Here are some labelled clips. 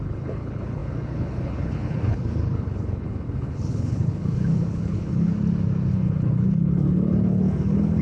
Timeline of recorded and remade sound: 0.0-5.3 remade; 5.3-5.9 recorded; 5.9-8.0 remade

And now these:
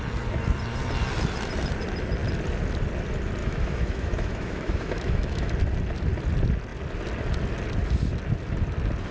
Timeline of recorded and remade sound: 0.0-3.4 recorded; 3.4-5.5 remade; 5.5-9.1 recorded

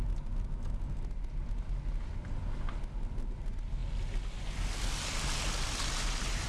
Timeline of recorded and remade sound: 0.0-6.5 recorded

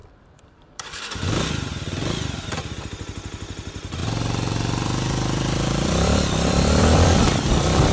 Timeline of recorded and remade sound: 0.0-1.5 remade; 1.5-4.0 recorded; 4.0-7.9 remade

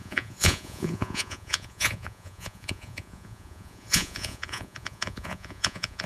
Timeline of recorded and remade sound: 0.0-6.1 remade

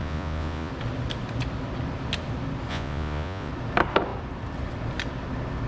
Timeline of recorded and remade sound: 0.0-0.7 remade; 0.7-2.7 recorded; 2.7-3.5 remade; 3.5-5.7 recorded

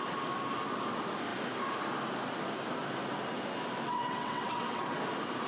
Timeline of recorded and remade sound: 0.0-3.8 recorded; 3.8-5.0 remade; 5.0-5.5 recorded